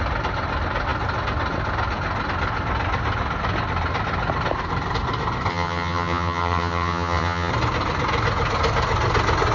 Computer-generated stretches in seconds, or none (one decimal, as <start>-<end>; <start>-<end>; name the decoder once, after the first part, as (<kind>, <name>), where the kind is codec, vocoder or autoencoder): 5.5-7.5 (vocoder, HiFi-GAN)